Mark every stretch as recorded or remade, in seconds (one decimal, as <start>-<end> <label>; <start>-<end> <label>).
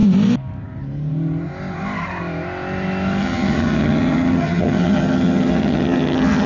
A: 0.0-3.2 recorded; 3.2-6.5 remade